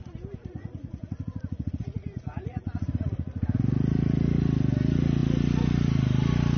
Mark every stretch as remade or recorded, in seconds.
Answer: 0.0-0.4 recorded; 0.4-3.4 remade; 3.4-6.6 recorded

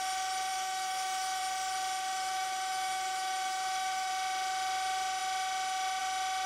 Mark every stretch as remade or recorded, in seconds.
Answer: 0.0-0.5 recorded; 0.5-1.4 remade; 1.4-2.1 recorded; 2.1-4.1 remade; 4.1-6.5 recorded

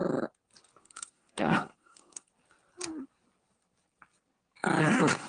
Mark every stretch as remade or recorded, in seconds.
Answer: 0.0-0.8 recorded; 0.8-2.3 remade; 2.3-4.8 recorded; 4.8-5.3 remade

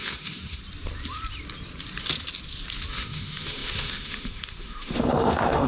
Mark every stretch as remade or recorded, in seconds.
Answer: 0.0-0.6 remade; 0.6-2.9 recorded; 2.9-5.7 remade

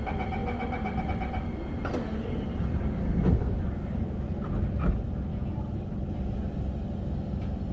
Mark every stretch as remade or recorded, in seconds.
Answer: 0.0-3.0 recorded; 3.0-3.6 remade; 3.6-7.7 recorded

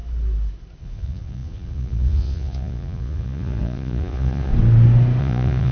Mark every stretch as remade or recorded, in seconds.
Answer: 0.0-0.8 recorded; 0.8-4.5 remade; 4.5-5.2 recorded; 5.2-5.7 remade

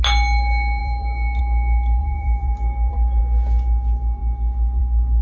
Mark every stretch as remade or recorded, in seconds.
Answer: 0.0-0.8 recorded; 0.8-1.4 remade; 1.4-2.0 recorded; 2.0-3.2 remade; 3.2-4.2 recorded; 4.2-4.8 remade; 4.8-5.2 recorded

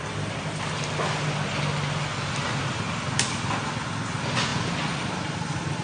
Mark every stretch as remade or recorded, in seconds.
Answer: 0.0-5.8 recorded